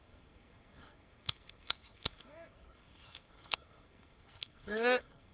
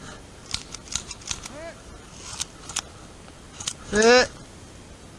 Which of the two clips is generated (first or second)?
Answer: first